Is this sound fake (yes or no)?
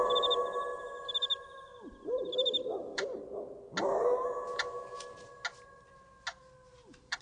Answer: no